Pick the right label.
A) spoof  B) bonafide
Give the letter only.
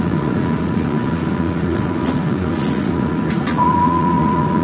A